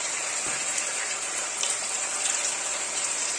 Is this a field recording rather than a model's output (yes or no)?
no